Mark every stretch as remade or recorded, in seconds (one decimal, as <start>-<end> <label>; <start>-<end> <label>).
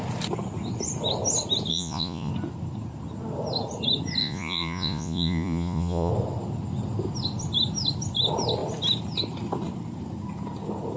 0.0-1.7 recorded; 1.7-2.3 remade; 2.3-4.2 recorded; 4.2-6.1 remade; 6.1-11.0 recorded